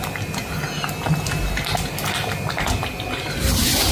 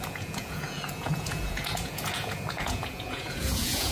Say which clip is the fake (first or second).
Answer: second